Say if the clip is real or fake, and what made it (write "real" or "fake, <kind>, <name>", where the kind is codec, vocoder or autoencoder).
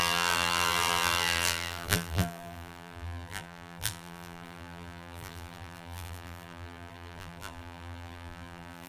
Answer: fake, vocoder, BigVGAN v2